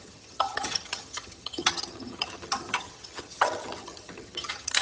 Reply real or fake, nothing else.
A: fake